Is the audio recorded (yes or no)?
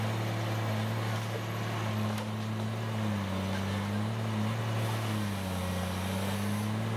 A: yes